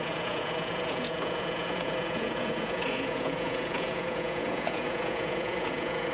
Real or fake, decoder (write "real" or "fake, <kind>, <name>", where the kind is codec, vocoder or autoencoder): fake, vocoder, Vocos